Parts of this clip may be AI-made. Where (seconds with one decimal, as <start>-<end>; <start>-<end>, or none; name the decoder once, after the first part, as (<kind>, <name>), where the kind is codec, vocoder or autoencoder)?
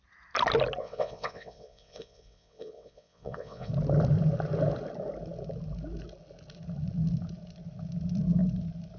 0.8-3.7 (vocoder, WaveNeXt)